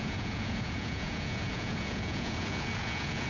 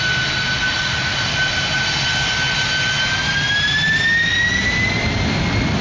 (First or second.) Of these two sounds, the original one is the second